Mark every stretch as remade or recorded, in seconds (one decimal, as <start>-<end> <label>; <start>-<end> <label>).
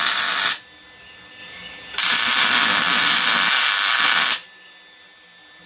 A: 0.0-2.7 remade; 2.7-4.0 recorded; 4.0-5.7 remade